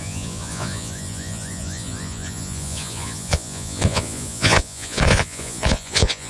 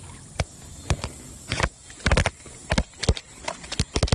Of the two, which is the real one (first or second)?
second